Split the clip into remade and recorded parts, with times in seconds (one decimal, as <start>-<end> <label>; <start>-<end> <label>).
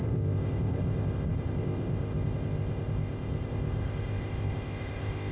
0.0-5.3 remade